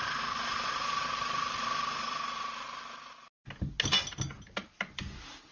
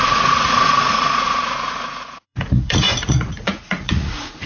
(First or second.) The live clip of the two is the first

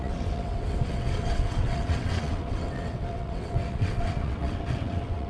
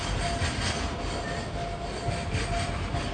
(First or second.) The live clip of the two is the second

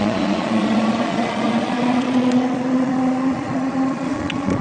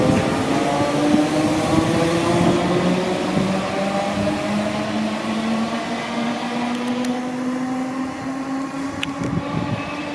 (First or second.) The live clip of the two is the second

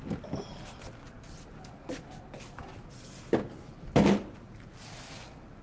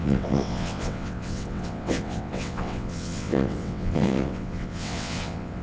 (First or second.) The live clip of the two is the first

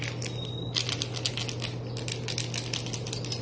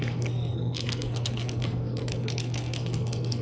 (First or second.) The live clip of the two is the first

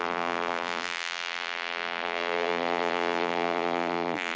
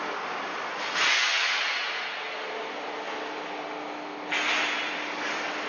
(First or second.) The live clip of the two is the second